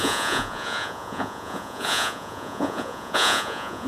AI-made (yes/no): yes